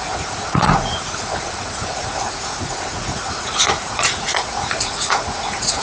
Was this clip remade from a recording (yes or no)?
yes